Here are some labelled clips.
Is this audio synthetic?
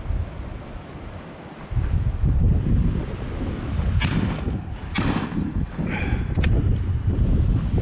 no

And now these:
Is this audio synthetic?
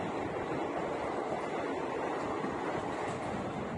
no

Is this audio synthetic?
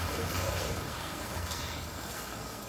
yes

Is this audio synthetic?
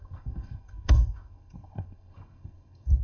yes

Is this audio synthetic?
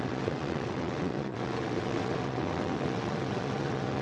yes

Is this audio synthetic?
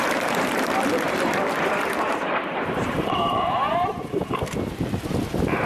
yes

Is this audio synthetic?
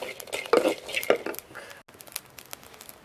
no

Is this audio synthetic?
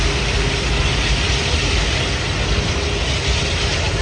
no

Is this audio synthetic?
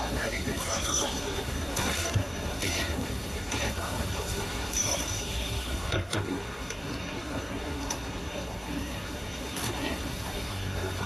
yes